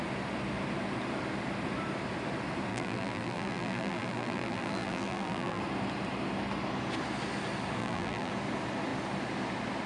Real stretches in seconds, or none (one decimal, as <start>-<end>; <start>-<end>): 0.0-2.7; 5.6-7.8; 8.3-9.9